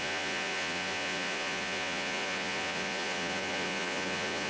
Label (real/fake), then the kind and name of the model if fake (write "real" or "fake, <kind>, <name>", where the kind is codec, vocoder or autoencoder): fake, vocoder, Vocos